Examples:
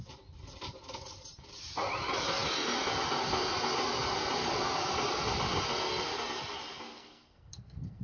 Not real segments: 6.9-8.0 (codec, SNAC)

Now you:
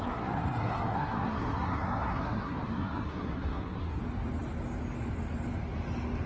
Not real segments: 0.0-4.0 (codec, SNAC)

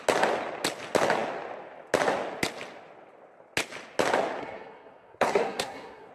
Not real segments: 4.4-6.1 (codec, SNAC)

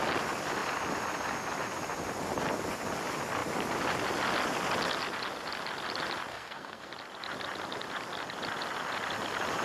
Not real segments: 6.3-6.9 (codec, SNAC)

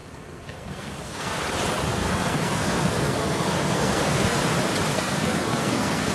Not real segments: 0.0-1.4 (codec, SNAC); 1.9-4.4; 4.9-6.1

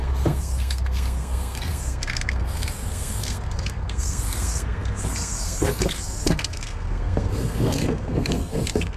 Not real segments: 0.0-9.0 (codec, SNAC)

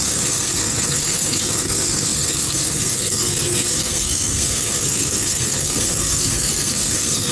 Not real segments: 0.0-7.3 (codec, SNAC)